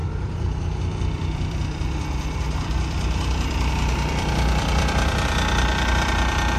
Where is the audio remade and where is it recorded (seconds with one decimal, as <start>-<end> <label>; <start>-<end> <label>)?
0.0-6.6 remade